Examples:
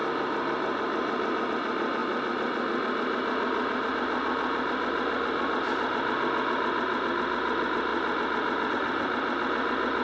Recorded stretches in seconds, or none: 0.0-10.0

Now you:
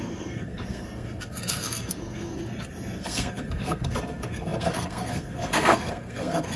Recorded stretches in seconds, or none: 2.3-3.0